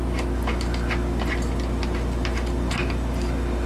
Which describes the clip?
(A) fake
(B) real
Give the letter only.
B